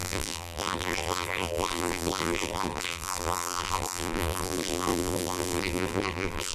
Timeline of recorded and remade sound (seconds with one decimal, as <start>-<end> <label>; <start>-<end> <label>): 0.0-6.5 remade